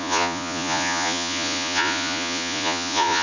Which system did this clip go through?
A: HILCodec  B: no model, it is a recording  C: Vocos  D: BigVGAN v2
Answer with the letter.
C